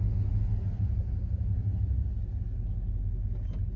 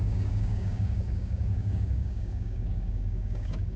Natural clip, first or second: first